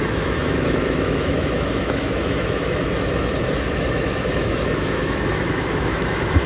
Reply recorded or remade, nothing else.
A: remade